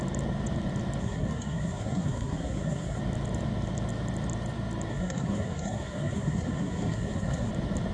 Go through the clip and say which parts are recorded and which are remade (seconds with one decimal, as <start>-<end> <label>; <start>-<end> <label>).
0.0-1.0 recorded; 1.0-3.0 remade; 3.0-4.9 recorded; 4.9-7.5 remade; 7.5-7.9 recorded